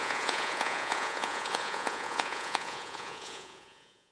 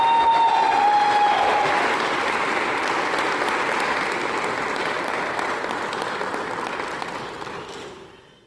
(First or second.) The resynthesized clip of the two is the first